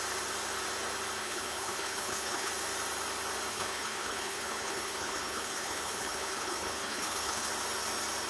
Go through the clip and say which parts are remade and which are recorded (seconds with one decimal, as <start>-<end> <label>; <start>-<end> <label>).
0.0-1.2 recorded; 1.2-2.5 remade; 2.5-3.5 recorded; 3.5-7.5 remade; 7.5-8.3 recorded